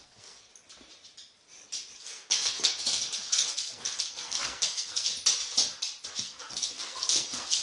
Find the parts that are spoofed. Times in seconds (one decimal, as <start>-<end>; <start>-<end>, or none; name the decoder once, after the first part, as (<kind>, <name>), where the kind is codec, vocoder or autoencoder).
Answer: 0.0-0.5 (codec, SNAC); 2.0-5.1; 6.1-7.6